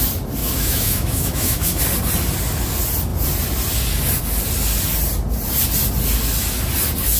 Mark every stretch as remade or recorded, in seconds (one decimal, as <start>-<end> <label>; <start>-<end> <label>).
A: 0.0-0.4 recorded; 0.4-1.8 remade; 1.8-7.2 recorded